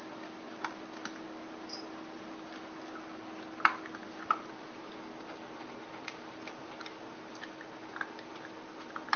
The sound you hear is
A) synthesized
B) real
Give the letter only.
B